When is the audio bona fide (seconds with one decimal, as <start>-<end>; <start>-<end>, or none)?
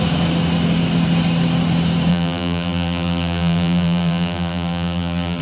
0.0-2.1